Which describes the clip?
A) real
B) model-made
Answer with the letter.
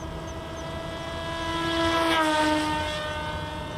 A